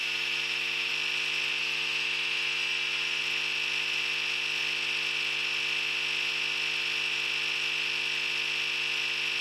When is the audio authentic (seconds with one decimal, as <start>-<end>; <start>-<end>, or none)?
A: 0.9-1.6; 3.2-9.4